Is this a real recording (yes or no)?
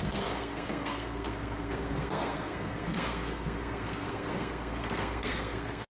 no